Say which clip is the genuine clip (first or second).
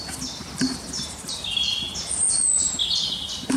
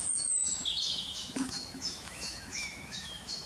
first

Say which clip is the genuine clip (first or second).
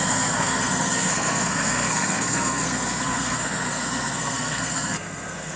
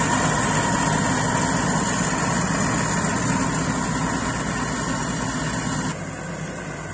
second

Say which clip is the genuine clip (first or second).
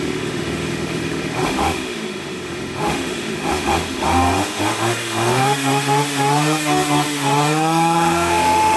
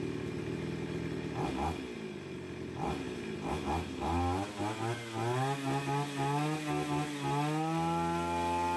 second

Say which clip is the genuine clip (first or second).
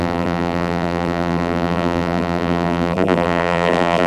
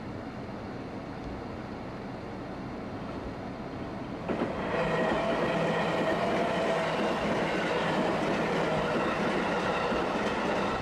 second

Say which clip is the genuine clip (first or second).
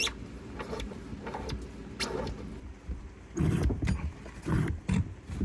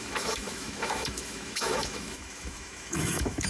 first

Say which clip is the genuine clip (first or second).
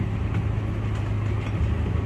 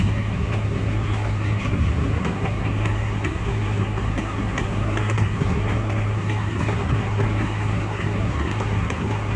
first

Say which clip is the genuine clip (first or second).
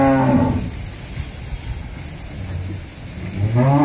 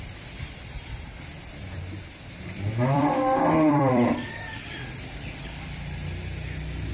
first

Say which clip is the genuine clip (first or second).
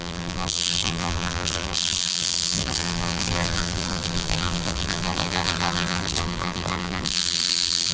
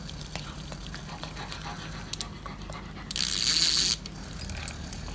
second